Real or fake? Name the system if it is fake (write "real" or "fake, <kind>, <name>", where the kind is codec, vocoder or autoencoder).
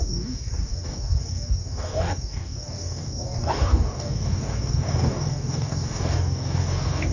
fake, codec, DAC